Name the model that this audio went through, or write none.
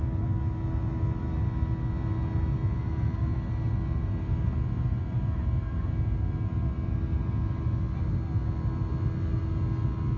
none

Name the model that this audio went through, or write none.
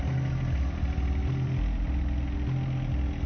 none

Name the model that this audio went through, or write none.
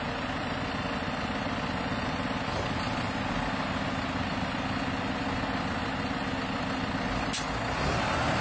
vocoder, BigVGAN v2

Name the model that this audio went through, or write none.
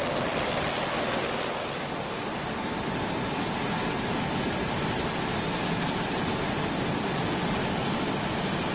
none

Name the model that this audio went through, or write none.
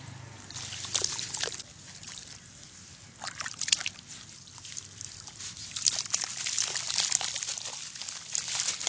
none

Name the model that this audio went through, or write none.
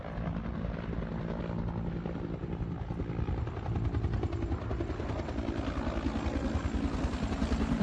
none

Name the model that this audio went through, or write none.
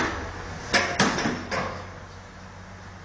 none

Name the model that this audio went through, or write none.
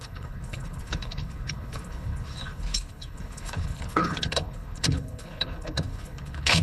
codec, HILCodec